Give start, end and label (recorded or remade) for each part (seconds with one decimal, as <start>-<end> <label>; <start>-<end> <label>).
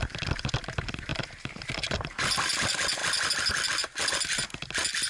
0.0-5.1 recorded